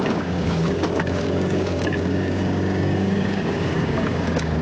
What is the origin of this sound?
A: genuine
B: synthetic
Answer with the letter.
B